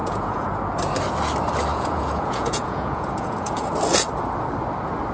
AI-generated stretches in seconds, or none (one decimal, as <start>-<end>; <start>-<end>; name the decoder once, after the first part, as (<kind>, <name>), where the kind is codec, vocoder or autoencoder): 0.0-0.6 (vocoder, Vocos); 1.7-3.7